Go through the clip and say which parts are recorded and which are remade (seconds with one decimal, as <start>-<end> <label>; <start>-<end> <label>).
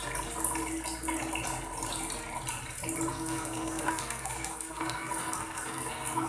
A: 0.0-3.1 recorded; 3.1-6.3 remade